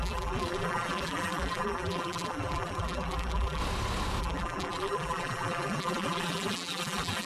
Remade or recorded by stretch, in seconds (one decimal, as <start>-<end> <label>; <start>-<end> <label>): 0.0-3.6 remade; 3.6-4.2 recorded; 4.2-7.3 remade